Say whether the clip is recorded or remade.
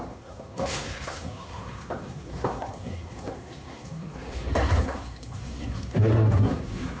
remade